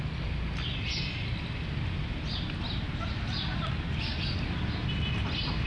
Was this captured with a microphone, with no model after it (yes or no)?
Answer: yes